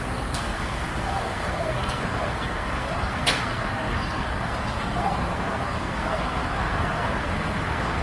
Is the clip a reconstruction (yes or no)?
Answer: yes